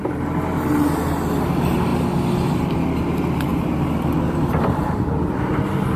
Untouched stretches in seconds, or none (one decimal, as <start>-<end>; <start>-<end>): 0.0-6.0